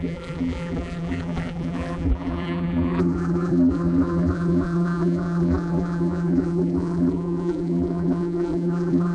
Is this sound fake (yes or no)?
yes